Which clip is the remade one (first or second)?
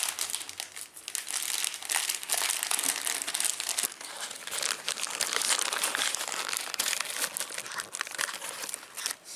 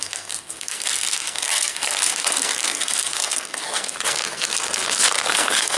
second